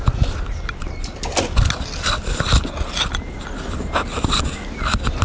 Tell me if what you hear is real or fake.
real